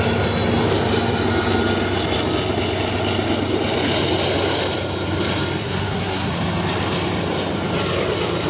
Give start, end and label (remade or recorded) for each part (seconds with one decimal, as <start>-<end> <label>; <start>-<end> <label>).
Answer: 0.0-5.6 recorded; 5.6-6.3 remade; 6.3-8.5 recorded